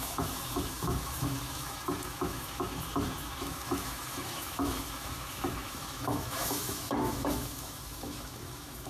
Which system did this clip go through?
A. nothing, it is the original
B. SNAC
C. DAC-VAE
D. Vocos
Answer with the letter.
C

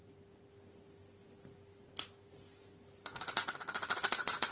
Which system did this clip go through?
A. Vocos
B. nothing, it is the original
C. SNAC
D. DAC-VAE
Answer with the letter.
B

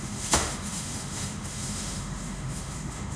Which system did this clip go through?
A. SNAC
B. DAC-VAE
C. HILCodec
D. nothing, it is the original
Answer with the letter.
B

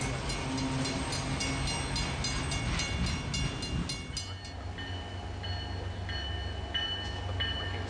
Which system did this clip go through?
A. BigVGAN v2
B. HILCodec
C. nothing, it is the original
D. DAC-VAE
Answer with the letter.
C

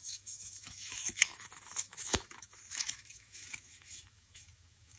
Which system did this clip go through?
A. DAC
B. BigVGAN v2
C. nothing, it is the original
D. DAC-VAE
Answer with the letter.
D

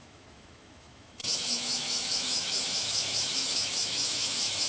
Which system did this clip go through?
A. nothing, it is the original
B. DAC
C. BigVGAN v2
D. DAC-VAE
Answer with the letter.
D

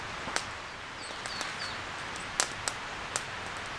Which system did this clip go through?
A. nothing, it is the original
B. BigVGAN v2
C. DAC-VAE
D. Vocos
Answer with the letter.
A